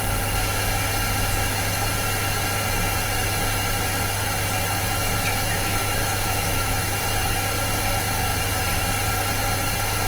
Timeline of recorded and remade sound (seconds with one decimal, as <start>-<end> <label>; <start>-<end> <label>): 0.0-5.8 recorded; 5.8-7.0 remade; 7.0-10.1 recorded